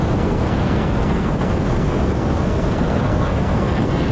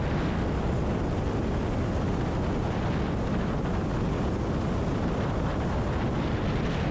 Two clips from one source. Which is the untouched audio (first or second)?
second